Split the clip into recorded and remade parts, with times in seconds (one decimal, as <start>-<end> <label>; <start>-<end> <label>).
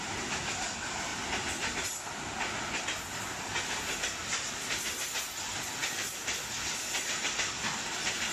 0.0-4.2 recorded; 4.2-4.7 remade; 4.7-5.8 recorded; 5.8-6.5 remade; 6.5-8.3 recorded